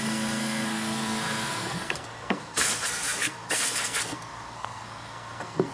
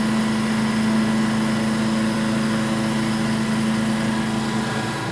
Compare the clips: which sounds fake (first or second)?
first